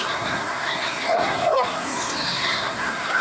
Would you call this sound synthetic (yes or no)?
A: yes